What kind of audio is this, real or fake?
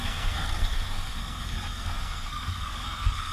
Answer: fake